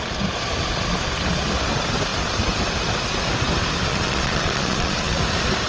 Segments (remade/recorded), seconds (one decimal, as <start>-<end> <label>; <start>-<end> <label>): 0.0-3.9 recorded; 3.9-5.2 remade; 5.2-5.7 recorded